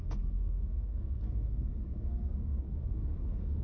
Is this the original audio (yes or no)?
no